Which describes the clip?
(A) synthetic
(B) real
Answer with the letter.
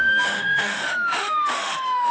A